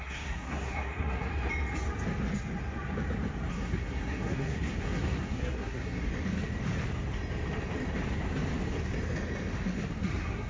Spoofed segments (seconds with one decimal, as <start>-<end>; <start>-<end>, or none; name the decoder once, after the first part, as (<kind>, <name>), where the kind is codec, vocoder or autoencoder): 0.0-1.3 (codec, SNAC); 3.5-6.1; 9.9-10.5